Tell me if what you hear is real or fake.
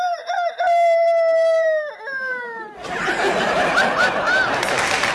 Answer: fake